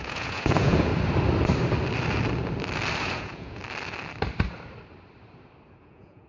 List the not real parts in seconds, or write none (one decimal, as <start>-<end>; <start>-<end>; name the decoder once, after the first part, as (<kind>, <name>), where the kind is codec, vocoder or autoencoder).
0.0-0.9 (vocoder, Vocos); 3.0-3.6; 5.8-6.3